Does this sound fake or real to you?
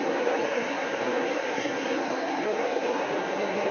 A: fake